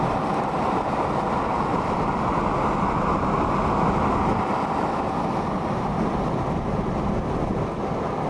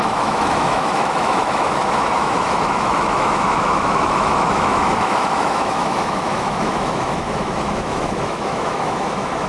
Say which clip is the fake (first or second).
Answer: second